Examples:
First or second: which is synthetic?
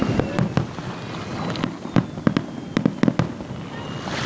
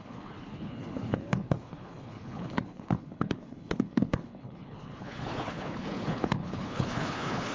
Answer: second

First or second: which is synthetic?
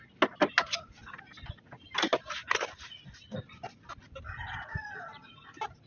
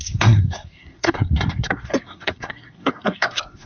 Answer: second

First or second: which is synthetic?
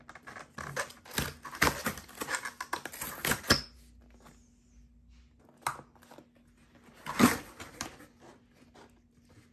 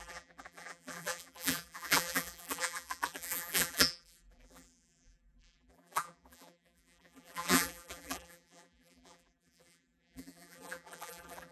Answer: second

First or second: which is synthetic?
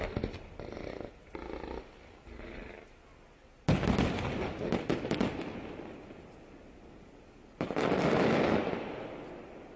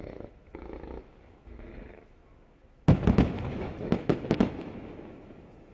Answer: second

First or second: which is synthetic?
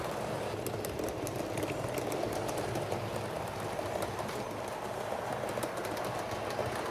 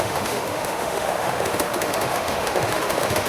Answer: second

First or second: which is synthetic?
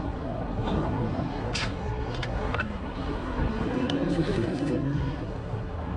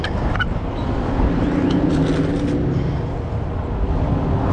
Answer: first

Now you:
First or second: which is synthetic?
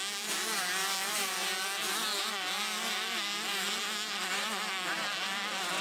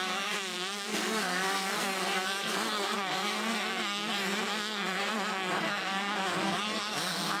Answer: second